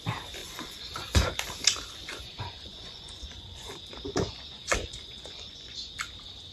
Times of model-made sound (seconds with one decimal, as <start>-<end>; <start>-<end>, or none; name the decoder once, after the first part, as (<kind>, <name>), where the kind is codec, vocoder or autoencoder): 0.4-1.3 (vocoder, Vocos); 2.0-5.9